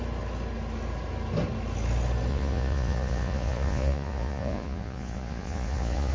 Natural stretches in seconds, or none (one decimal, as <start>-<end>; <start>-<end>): 0.0-2.3